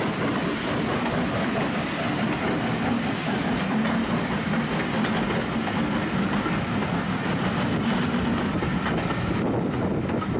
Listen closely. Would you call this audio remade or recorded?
recorded